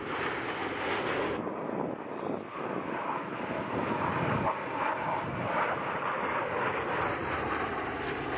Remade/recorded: recorded